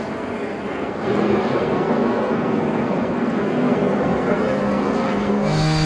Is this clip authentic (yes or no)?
no